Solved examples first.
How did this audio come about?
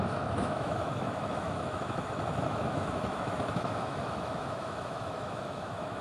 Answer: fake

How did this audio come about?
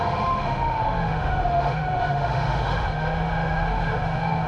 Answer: fake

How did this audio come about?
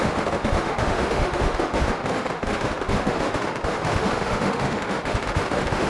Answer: fake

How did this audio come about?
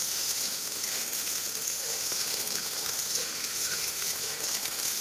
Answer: fake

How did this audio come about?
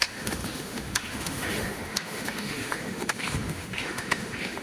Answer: fake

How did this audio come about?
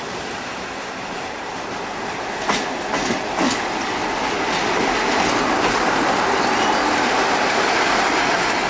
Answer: real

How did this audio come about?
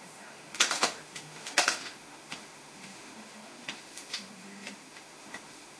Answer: fake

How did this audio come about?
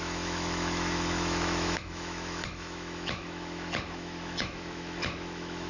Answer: fake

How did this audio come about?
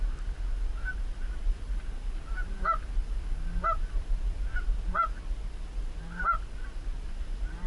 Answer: real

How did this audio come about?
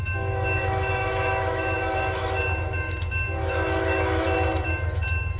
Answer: fake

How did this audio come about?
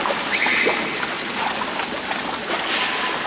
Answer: real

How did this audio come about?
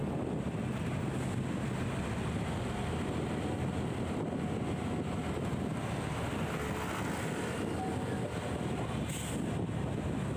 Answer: real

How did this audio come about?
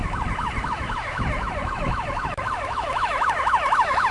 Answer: fake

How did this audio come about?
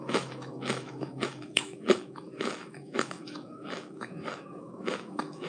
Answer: fake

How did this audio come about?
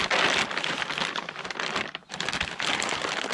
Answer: real